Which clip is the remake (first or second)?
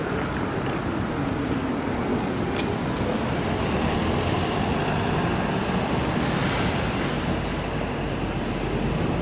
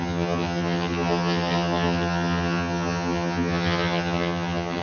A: second